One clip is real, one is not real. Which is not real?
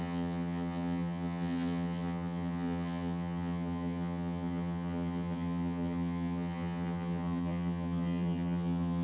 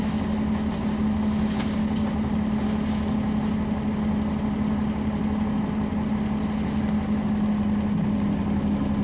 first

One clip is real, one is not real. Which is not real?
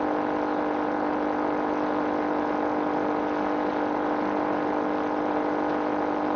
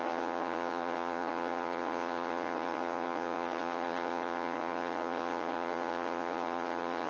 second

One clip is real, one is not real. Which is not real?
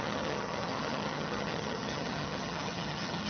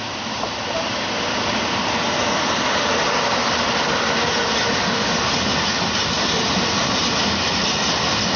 first